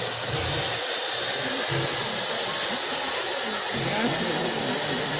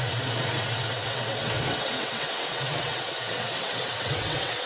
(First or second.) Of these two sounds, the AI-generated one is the second